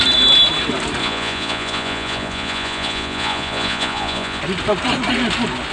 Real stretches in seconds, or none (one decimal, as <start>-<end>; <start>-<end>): 0.0-1.0; 4.4-5.7